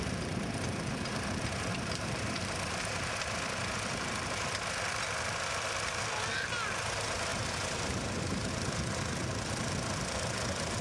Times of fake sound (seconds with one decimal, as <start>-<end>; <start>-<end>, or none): 1.7-3.1